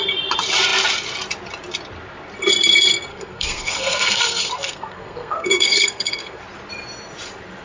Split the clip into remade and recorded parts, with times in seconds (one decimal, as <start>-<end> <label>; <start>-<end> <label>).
0.0-3.1 recorded; 3.1-6.4 remade; 6.4-7.6 recorded